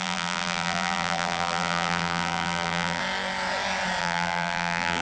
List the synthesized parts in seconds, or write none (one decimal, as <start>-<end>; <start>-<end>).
0.0-3.0; 4.0-5.0